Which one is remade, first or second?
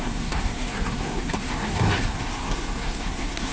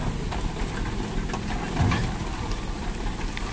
first